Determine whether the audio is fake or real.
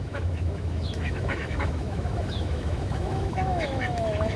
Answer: fake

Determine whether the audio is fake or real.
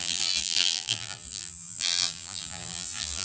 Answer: fake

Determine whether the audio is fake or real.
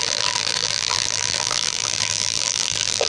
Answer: fake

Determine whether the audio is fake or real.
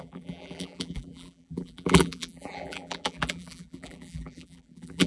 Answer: fake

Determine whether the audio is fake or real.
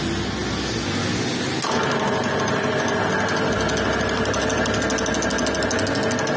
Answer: real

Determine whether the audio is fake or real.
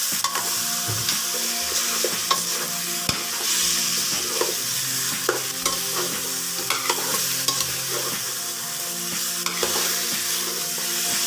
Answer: real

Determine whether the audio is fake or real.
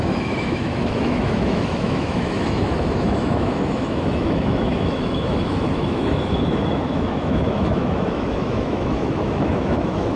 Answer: fake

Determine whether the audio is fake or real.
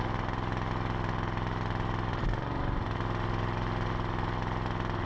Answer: real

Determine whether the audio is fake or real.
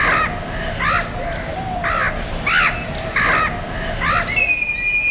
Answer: real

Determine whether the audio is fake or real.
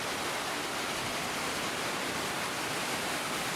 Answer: real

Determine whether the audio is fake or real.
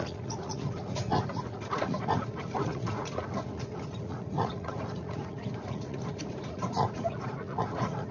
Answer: fake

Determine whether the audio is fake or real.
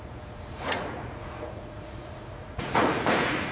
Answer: fake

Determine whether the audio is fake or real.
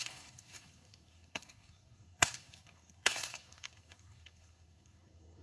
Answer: fake